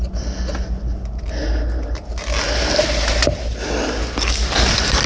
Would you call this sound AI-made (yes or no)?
no